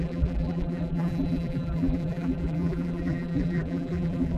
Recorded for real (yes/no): no